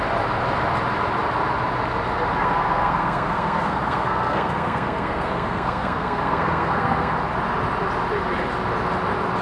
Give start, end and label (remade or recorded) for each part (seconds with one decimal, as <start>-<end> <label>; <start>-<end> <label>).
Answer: 0.0-2.4 recorded; 2.4-7.1 remade; 7.1-9.4 recorded